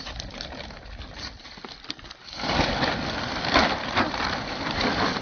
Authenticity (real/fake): fake